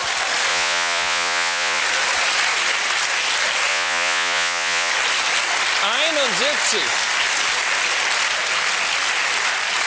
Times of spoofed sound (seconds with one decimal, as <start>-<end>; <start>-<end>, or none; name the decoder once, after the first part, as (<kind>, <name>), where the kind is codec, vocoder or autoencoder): 0.5-1.8 (vocoder, Vocos); 3.7-4.9